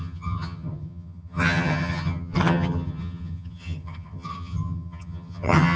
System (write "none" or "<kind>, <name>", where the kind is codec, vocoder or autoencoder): vocoder, HiFi-GAN